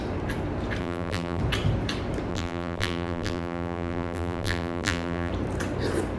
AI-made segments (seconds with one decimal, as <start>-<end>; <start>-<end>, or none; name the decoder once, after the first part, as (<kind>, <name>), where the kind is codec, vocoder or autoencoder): 0.8-1.4 (vocoder, BigVGAN v2); 2.3-5.3